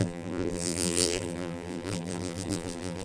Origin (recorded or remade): remade